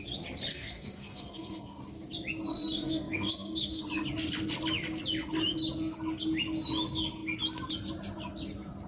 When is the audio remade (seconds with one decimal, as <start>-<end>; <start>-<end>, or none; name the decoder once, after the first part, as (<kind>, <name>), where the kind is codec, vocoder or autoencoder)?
0.5-1.8 (codec, SNAC); 2.5-3.8